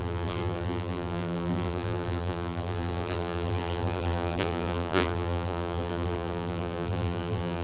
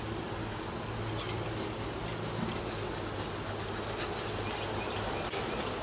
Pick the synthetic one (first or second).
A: first